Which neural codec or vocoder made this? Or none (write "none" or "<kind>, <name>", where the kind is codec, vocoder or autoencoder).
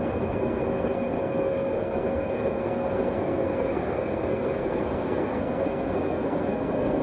codec, SNAC